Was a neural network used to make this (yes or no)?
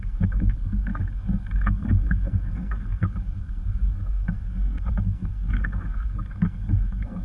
yes